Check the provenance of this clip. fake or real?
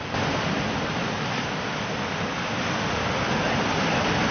real